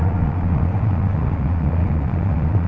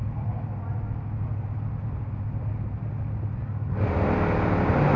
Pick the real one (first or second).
second